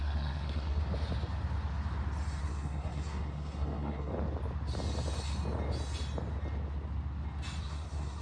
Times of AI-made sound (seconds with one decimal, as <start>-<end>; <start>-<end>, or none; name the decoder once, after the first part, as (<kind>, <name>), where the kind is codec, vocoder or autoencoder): 0.0-0.8 (codec, SNAC); 2.4-4.1; 7.6-8.2